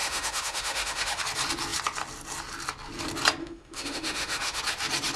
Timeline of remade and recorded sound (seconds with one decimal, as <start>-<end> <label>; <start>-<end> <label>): 0.0-1.2 remade; 1.2-3.4 recorded; 3.4-4.6 remade; 4.6-5.2 recorded